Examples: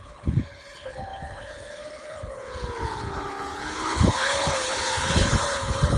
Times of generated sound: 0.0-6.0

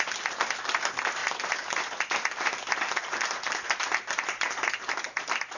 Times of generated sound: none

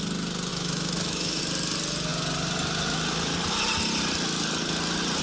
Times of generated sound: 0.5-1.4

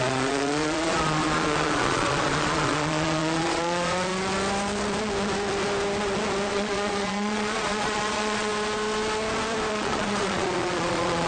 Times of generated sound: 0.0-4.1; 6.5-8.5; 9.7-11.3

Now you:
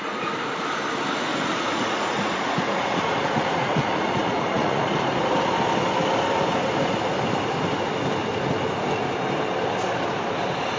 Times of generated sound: 1.3-4.8